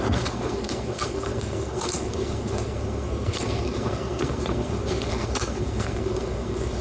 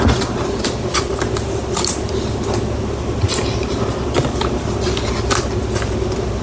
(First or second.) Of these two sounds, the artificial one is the first